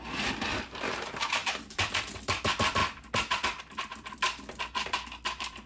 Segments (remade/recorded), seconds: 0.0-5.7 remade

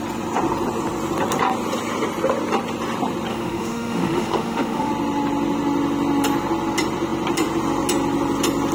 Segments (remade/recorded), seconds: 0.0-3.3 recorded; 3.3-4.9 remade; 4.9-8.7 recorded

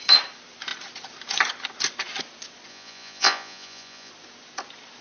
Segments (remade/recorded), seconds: 0.0-2.7 recorded; 2.7-4.1 remade; 4.1-5.0 recorded